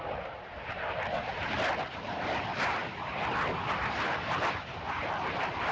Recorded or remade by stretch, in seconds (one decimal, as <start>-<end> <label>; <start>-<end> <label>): 0.0-5.7 remade